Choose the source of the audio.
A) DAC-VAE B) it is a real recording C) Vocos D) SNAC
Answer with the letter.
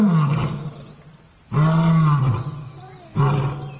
B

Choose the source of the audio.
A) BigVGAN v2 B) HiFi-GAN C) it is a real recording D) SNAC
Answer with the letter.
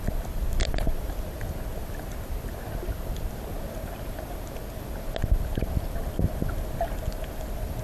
C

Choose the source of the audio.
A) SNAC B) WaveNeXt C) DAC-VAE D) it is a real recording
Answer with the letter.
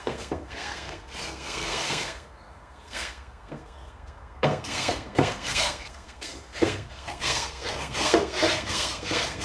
A